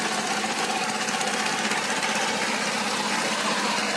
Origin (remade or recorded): recorded